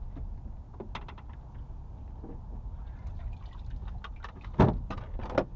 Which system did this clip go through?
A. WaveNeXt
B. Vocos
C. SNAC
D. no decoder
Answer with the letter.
D